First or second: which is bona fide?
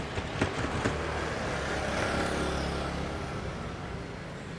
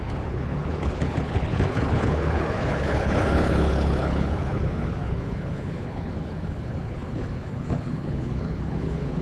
first